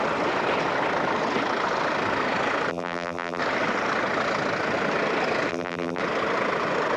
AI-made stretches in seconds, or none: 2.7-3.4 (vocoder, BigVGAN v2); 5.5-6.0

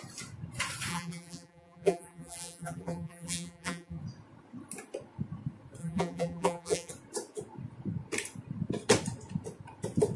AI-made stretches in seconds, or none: 0.9-4.0 (vocoder, BigVGAN v2); 5.8-6.9

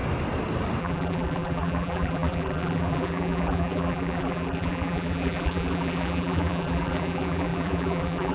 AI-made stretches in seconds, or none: 0.8-8.3 (vocoder, BigVGAN v2)

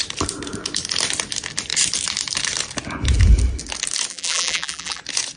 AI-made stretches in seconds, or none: 4.1-5.0 (vocoder, BigVGAN v2)

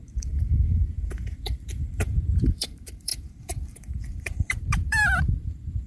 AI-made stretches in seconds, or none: 0.0-5.9 (vocoder, BigVGAN v2)

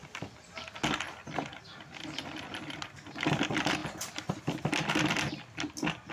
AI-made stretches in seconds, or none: none